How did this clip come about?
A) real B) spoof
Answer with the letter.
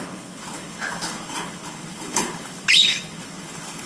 B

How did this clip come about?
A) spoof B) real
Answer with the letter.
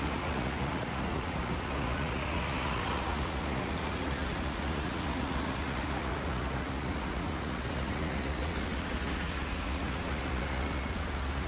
A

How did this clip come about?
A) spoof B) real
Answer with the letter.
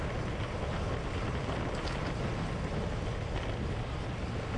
B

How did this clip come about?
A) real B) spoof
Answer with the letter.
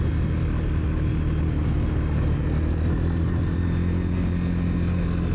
A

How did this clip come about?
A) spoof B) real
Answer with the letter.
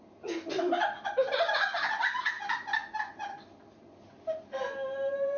B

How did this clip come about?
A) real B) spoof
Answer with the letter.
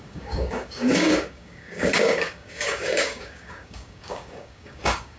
B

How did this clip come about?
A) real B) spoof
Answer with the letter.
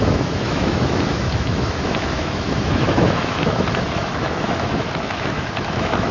B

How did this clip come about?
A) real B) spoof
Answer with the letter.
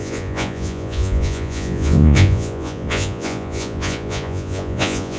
B